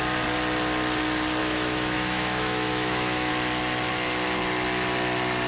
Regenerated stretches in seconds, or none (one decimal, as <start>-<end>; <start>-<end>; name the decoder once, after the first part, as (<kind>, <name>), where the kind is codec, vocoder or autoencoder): 1.4-3.3 (autoencoder, DAC-VAE)